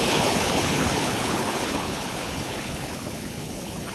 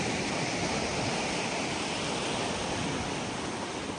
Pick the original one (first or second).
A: second